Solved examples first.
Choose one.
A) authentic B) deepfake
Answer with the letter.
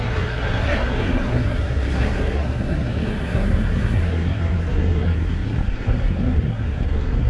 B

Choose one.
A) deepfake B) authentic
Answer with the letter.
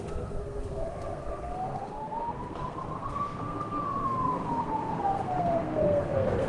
A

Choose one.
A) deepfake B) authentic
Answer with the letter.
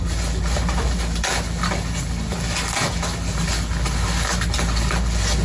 B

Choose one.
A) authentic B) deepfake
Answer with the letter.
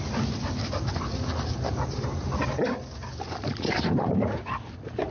A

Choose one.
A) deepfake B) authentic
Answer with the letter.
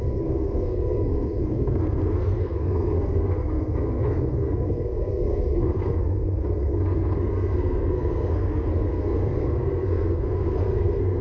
A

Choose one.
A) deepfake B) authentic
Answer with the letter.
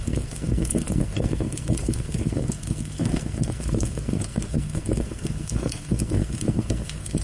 A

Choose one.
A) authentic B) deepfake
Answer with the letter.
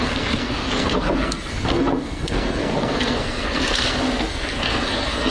B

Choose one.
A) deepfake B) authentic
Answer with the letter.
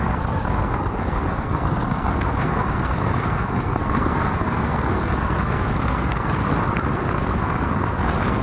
A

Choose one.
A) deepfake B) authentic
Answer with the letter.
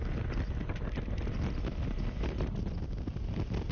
B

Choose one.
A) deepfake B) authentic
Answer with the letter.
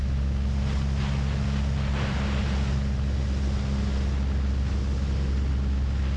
B